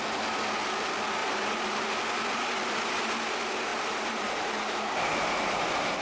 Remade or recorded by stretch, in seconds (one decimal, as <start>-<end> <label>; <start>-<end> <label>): 0.0-1.2 recorded; 1.2-1.9 remade; 1.9-3.7 recorded; 3.7-5.2 remade; 5.2-6.0 recorded